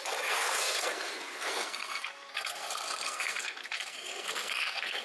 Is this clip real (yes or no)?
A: no